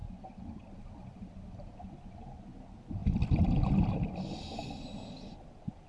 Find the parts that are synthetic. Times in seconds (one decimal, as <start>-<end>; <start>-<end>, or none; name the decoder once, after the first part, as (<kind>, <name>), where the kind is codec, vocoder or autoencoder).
none